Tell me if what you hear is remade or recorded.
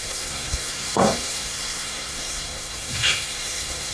remade